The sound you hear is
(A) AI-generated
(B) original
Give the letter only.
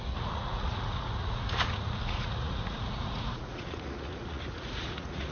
A